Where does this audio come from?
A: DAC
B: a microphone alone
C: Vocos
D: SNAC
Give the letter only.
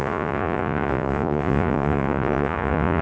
C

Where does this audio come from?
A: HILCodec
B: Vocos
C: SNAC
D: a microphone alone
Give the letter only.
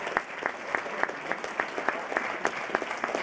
D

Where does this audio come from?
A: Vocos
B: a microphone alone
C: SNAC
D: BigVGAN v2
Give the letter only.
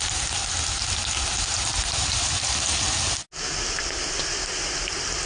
B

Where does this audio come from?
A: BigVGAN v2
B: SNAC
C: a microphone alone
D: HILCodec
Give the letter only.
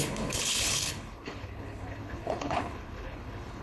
D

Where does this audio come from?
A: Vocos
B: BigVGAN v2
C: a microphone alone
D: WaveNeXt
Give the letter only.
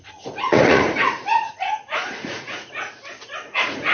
A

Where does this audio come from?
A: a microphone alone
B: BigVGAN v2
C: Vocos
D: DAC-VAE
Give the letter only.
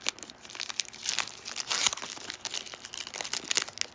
A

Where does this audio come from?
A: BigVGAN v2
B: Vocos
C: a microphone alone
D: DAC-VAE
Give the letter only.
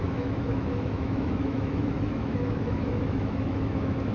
D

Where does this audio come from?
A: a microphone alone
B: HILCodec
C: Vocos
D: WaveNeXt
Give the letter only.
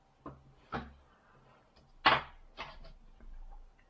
A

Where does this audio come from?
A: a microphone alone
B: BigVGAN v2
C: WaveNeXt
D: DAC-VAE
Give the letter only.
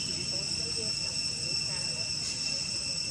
A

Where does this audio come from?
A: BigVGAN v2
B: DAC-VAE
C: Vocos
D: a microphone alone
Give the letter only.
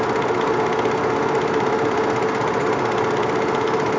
D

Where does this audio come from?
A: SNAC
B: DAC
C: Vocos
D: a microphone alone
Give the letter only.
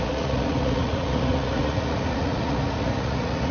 C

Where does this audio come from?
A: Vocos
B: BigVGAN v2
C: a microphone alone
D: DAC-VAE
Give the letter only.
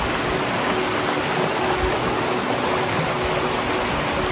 C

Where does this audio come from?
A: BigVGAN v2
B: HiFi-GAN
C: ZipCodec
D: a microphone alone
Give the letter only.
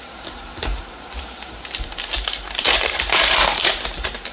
A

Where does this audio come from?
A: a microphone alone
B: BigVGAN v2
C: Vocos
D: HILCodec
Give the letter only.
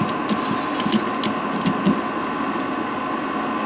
A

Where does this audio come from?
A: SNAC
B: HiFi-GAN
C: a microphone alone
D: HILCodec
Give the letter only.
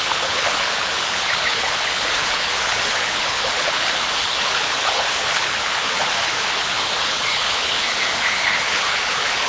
D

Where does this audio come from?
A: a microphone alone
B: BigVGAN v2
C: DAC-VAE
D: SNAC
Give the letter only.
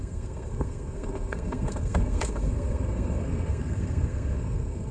D